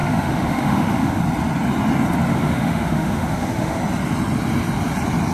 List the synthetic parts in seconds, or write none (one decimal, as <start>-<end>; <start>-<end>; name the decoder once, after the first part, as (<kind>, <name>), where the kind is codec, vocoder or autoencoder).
0.0-1.2 (autoencoder, DAC-VAE); 2.3-3.8